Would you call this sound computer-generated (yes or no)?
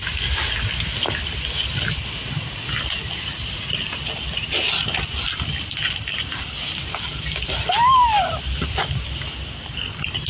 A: no